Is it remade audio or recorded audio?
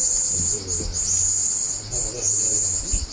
recorded